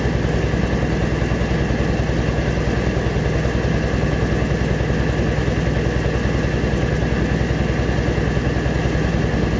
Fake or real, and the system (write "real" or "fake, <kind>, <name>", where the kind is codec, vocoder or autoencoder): real